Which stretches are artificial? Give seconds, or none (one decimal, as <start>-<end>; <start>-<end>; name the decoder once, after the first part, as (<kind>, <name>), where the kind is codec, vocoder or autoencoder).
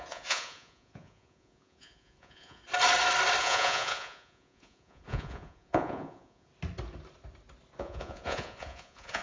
0.0-2.6 (vocoder, Vocos); 3.4-6.5; 7.8-9.2